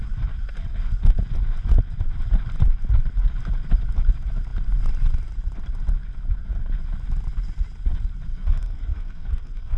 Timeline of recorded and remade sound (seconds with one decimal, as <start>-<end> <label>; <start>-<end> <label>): 0.0-8.3 recorded; 8.3-9.8 remade